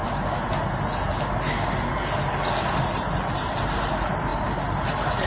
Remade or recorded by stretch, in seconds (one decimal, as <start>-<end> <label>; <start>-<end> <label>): 0.0-5.3 recorded